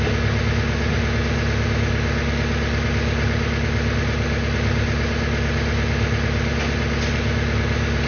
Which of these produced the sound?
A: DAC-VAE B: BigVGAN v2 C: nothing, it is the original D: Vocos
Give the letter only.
C